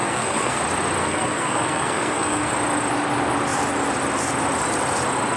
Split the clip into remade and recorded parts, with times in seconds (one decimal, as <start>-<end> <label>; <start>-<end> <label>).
0.0-0.6 remade; 0.6-1.0 recorded; 1.0-2.5 remade; 2.5-5.4 recorded